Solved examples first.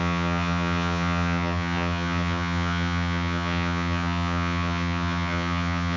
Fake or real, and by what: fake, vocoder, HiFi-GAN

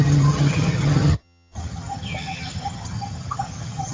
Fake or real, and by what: fake, vocoder, HiFi-GAN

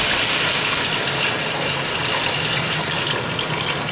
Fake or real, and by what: real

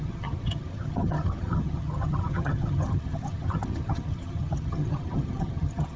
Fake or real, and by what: fake, vocoder, HiFi-GAN